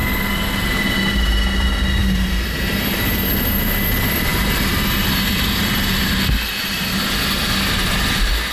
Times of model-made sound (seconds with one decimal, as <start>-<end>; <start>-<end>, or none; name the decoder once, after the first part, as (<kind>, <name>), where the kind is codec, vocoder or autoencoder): 2.0-2.6 (vocoder, BigVGAN v2)